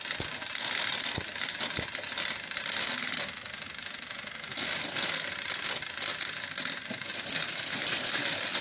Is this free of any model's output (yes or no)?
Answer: yes